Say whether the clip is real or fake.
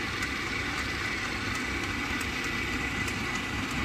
real